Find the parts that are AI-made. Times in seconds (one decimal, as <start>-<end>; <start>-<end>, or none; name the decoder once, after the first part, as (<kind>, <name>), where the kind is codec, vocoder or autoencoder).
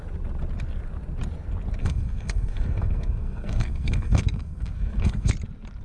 1.8-5.3 (codec, SNAC)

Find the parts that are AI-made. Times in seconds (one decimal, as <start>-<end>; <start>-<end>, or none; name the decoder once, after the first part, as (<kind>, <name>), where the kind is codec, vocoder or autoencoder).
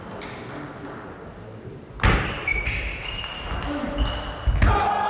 none